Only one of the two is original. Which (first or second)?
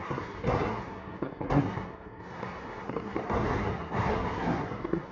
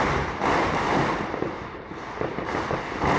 second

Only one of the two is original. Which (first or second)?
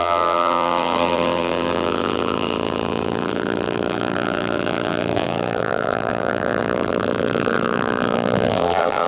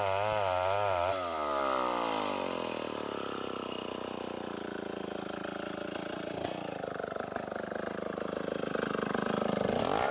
second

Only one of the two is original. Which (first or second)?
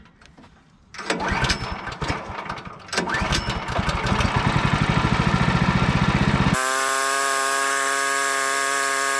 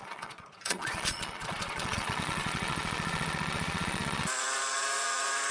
first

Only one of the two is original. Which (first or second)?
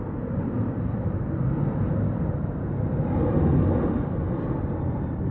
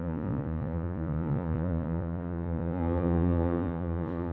first